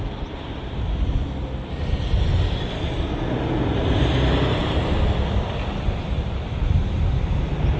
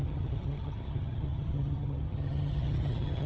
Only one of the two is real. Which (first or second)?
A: first